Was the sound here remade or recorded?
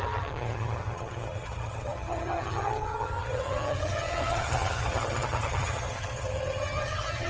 remade